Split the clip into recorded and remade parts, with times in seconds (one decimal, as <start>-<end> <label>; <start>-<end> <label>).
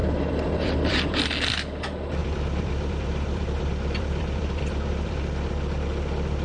0.0-1.2 remade; 1.2-2.2 recorded; 2.2-5.2 remade; 5.2-6.4 recorded